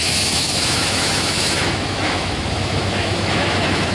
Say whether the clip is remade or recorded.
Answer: remade